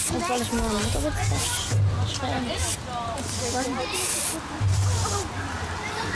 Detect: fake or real real